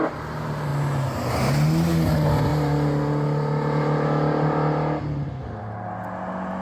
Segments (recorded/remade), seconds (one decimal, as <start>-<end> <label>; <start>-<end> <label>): 0.0-6.6 recorded